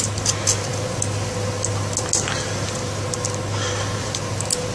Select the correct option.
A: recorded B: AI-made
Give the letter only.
A